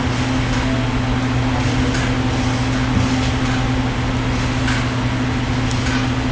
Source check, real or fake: real